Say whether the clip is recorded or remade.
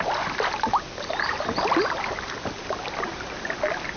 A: recorded